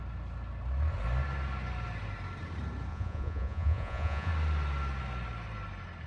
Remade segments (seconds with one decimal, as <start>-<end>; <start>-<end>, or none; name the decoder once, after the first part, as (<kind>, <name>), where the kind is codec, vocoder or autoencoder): 2.9-4.3 (vocoder, Vocos)